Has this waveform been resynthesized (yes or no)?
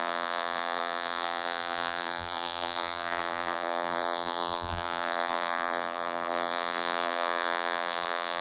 yes